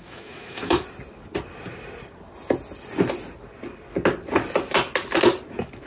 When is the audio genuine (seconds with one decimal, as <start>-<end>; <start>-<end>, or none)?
0.8-5.9